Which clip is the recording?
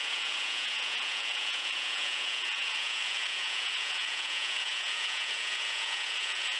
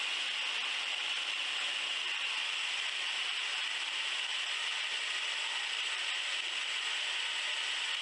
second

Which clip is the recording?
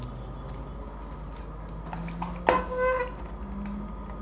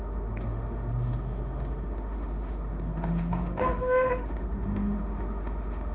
first